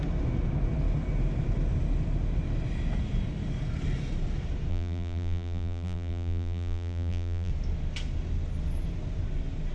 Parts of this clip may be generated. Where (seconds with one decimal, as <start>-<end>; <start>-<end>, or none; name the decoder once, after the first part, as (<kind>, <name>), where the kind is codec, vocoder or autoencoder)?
4.7-7.5 (vocoder, BigVGAN v2)